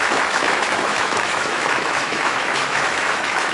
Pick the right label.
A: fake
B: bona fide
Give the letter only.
A